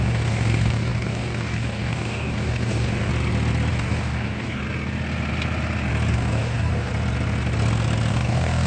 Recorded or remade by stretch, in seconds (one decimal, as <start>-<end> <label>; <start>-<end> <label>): 0.0-3.1 remade; 3.1-3.7 recorded; 3.7-4.6 remade; 4.6-6.1 recorded; 6.1-6.9 remade; 6.9-8.1 recorded; 8.1-8.7 remade